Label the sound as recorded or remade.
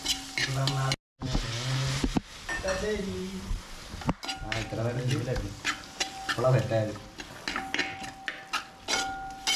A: recorded